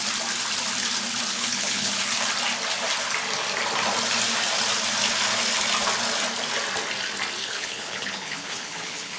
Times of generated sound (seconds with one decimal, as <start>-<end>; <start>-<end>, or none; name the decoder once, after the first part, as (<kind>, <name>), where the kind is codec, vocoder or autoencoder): 1.3-1.9 (codec, HILCodec); 7.4-9.2